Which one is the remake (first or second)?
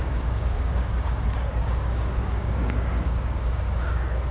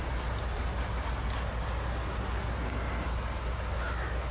first